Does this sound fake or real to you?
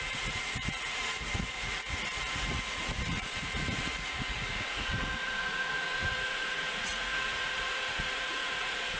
fake